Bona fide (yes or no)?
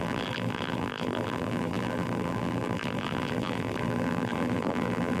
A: no